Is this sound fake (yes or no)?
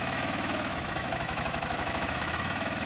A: yes